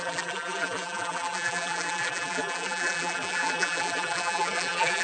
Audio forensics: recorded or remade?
remade